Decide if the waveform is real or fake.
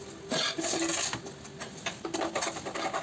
real